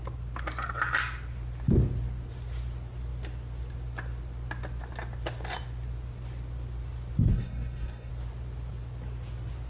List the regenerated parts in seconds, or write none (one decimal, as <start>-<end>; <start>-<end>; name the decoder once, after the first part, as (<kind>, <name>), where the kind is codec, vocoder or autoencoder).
7.3-8.1 (codec, SNAC)